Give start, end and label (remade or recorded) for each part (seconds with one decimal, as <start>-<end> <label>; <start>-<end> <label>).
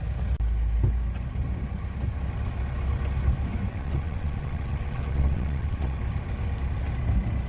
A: 0.0-3.7 recorded; 3.7-6.0 remade; 6.0-7.5 recorded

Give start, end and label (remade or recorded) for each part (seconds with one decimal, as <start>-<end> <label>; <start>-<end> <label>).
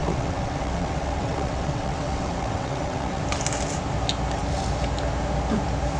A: 0.0-3.2 remade; 3.2-6.0 recorded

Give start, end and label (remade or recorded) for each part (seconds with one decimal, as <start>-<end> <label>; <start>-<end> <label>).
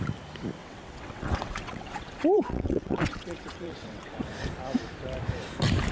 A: 0.0-0.6 recorded; 0.6-4.1 remade; 4.1-5.9 recorded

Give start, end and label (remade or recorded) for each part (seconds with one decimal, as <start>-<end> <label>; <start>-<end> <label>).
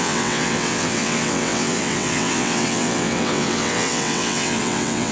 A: 0.0-5.1 remade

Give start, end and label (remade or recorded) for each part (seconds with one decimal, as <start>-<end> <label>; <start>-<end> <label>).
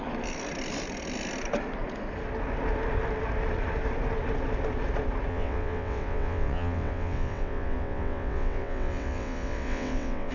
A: 0.0-5.3 recorded; 5.3-10.3 remade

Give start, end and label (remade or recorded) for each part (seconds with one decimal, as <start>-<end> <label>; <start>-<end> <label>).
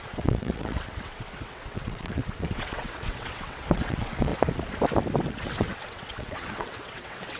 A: 0.0-4.3 remade; 4.3-5.3 recorded; 5.3-7.4 remade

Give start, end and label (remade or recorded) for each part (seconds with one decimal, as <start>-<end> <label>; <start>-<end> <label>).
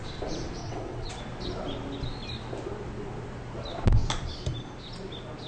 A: 0.0-0.6 recorded; 0.6-1.2 remade; 1.2-5.5 recorded